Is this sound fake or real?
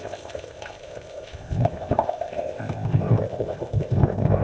fake